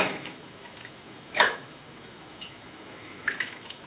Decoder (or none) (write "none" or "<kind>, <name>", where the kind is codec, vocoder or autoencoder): autoencoder, DAC-VAE